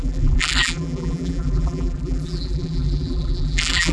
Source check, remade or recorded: remade